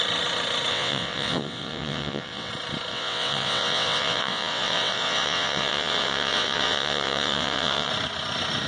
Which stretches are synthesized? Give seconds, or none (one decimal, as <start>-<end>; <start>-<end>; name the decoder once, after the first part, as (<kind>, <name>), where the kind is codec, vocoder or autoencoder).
0.7-2.5 (vocoder, WaveNeXt); 2.9-7.9